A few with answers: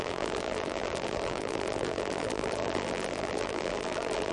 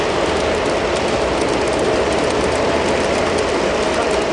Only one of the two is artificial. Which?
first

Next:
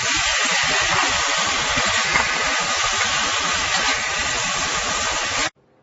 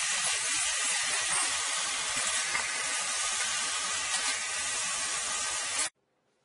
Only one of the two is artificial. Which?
second